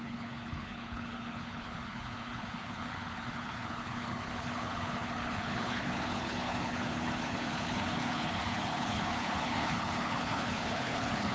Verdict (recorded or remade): remade